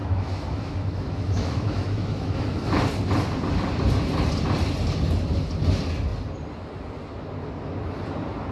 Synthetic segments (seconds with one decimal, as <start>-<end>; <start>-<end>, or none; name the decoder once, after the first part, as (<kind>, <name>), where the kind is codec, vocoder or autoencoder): 0.0-2.8 (autoencoder, DAC-VAE)